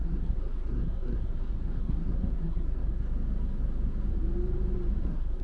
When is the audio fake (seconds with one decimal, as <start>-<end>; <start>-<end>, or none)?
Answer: 0.0-3.1; 5.0-5.4